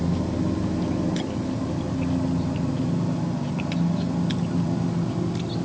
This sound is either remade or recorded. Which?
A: recorded